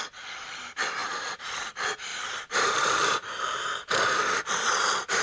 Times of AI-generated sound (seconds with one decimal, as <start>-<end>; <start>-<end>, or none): 1.0-1.7; 2.1-4.3